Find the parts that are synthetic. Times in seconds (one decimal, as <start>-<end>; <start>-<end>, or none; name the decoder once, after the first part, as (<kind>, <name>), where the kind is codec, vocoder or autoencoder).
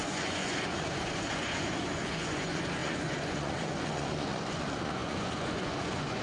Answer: 0.0-6.2 (vocoder, Vocos)